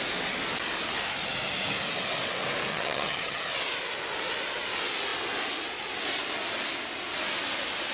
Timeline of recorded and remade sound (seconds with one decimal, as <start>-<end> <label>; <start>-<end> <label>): 0.0-2.7 recorded; 2.7-3.4 remade; 3.4-7.9 recorded